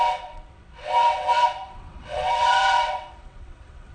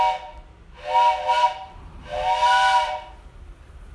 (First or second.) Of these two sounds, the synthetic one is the first